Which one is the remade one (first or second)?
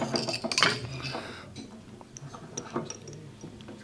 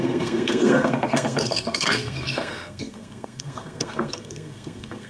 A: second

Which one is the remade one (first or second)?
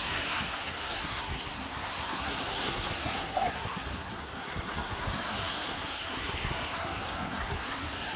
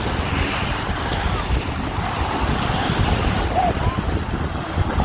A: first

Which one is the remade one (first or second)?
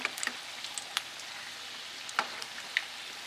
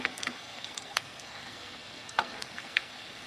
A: second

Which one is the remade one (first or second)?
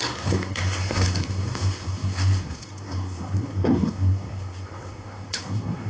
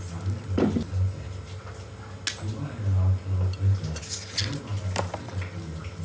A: first